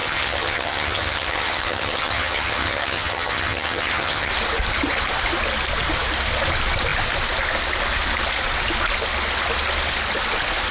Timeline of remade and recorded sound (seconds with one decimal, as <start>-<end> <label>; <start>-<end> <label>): 0.0-4.3 remade; 4.3-10.7 recorded